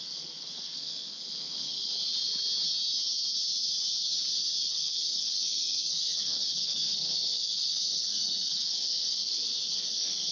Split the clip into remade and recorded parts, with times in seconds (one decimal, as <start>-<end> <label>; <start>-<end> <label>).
0.0-1.9 remade; 1.9-4.7 recorded; 4.7-10.3 remade